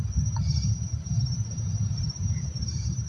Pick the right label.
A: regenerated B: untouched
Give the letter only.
A